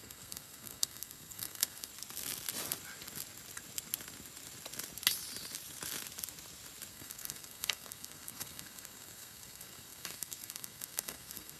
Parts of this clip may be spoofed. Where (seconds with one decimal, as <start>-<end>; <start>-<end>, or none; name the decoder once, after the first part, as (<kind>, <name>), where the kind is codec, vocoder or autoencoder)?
0.0-1.9 (codec, SNAC); 6.9-11.6